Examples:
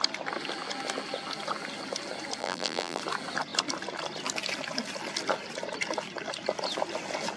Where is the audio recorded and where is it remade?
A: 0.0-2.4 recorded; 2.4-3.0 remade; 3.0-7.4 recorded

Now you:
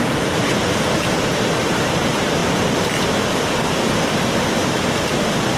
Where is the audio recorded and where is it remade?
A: 0.0-4.6 remade; 4.6-5.6 recorded

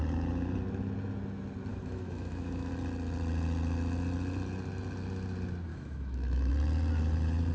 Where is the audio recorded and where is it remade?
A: 0.0-1.7 recorded; 1.7-2.7 remade; 2.7-5.7 recorded; 5.7-6.5 remade; 6.5-7.5 recorded